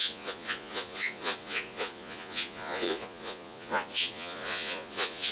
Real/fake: fake